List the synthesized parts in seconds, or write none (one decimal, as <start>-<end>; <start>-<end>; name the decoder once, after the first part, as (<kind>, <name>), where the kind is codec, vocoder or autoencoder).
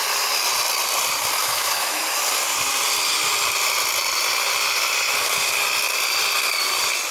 1.4-2.0 (autoencoder, DAC-VAE)